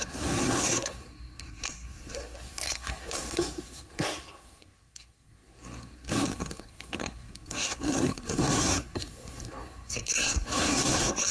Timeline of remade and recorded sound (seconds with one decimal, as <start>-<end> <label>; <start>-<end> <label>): 0.0-11.3 remade